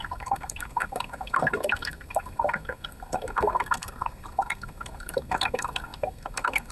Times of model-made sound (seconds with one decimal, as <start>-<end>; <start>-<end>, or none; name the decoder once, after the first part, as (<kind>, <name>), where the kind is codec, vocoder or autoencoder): 0.0-6.7 (codec, SNAC)